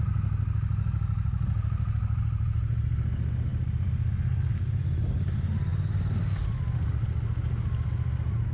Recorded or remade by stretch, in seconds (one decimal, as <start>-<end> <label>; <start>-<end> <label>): 0.0-8.5 recorded